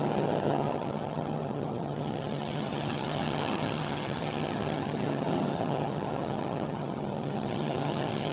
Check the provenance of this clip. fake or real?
fake